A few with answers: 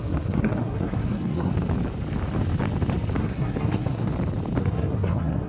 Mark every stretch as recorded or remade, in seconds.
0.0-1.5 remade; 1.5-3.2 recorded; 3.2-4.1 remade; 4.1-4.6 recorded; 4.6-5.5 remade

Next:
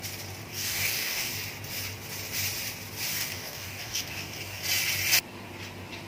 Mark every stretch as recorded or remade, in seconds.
0.0-0.5 recorded; 0.5-1.3 remade; 1.3-3.1 recorded; 3.1-4.6 remade; 4.6-6.1 recorded

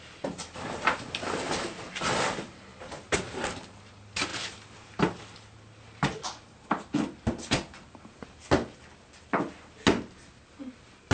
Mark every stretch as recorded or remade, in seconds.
0.0-11.1 recorded

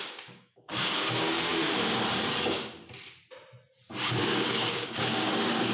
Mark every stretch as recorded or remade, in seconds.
0.0-1.5 remade; 1.5-4.1 recorded; 4.1-5.7 remade

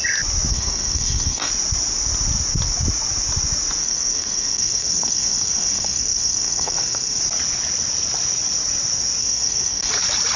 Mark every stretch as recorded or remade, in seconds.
0.0-0.5 recorded; 0.5-1.5 remade; 1.5-3.8 recorded; 3.8-7.2 remade; 7.2-9.2 recorded; 9.2-9.9 remade; 9.9-10.4 recorded

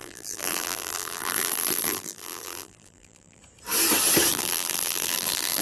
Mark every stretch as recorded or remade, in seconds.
0.0-3.4 remade; 3.4-4.3 recorded; 4.3-5.6 remade